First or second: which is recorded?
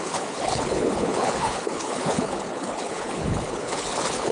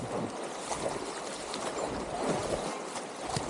second